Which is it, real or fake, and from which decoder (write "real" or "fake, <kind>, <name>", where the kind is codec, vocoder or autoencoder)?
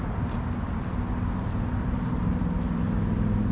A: real